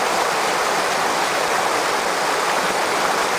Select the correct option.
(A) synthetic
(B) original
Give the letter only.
B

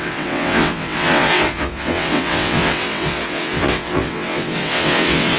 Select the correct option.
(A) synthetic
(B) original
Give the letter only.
A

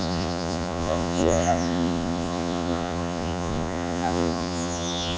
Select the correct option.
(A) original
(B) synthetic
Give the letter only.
B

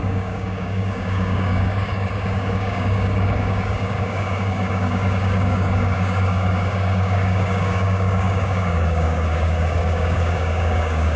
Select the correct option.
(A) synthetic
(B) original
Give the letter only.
A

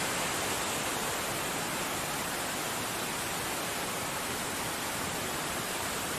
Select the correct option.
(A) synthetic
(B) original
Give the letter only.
B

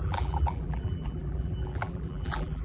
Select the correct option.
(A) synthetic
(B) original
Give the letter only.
A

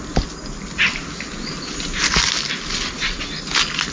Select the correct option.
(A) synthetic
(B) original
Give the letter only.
B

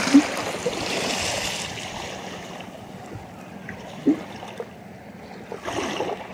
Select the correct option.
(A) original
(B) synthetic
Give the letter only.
A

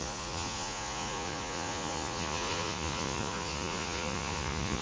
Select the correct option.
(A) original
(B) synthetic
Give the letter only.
B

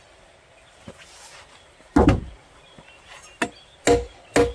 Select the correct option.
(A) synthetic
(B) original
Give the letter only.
B